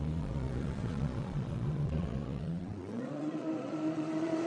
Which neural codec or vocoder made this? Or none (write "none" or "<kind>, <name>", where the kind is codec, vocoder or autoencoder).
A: vocoder, Vocos